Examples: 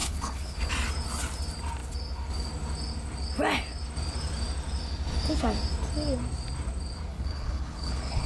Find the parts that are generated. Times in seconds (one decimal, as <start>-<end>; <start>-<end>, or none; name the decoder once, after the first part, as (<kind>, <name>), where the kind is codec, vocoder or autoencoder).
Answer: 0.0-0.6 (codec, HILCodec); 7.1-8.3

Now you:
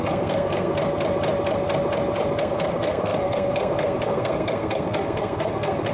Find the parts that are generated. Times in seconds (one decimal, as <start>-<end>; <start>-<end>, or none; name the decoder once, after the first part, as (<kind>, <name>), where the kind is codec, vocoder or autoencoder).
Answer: 0.0-0.7 (codec, SNAC); 2.4-5.9

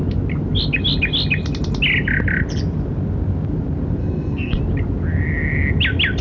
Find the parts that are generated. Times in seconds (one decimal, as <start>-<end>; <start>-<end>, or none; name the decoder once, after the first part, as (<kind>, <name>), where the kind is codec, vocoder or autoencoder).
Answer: 4.0-4.6 (codec, SNAC)

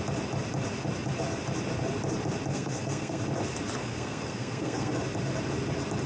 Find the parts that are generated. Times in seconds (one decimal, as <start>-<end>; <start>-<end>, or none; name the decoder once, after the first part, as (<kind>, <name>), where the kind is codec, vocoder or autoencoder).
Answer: 2.5-3.2 (codec, SNAC); 3.8-4.9